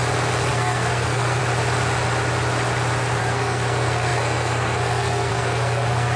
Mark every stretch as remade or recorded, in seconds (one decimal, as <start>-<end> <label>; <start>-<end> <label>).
0.0-0.5 recorded; 0.5-1.4 remade; 1.4-3.2 recorded; 3.2-6.2 remade